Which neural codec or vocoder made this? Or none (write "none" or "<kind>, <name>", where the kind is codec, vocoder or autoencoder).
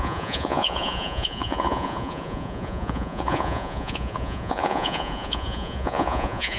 vocoder, Vocos